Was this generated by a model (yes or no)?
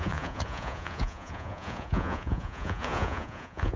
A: yes